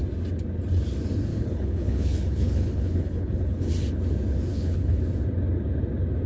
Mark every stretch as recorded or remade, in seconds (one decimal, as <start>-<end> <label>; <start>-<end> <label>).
0.0-1.3 recorded; 1.3-3.7 remade; 3.7-4.5 recorded; 4.5-5.0 remade; 5.0-6.3 recorded